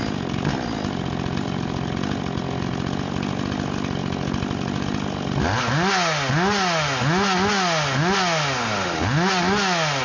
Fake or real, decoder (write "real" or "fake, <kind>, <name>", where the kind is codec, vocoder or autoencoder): real